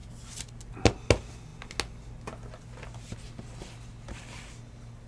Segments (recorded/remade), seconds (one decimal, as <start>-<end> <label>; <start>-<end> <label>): 0.0-5.1 recorded